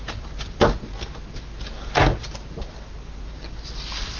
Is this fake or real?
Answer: real